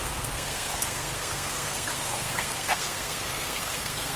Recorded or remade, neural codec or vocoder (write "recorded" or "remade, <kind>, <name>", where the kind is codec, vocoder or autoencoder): remade, codec, SNAC